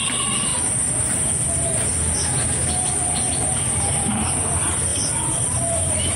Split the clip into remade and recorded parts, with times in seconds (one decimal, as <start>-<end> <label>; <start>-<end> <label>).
0.0-0.5 recorded; 0.5-1.1 remade; 1.1-4.9 recorded; 4.9-6.2 remade